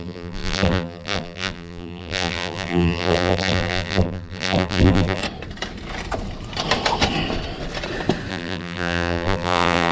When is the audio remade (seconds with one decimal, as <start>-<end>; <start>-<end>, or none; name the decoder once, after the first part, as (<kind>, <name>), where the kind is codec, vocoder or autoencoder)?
0.0-5.2 (vocoder, BigVGAN v2); 8.3-9.9